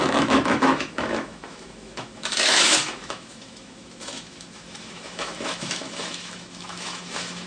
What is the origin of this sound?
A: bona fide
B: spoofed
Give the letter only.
B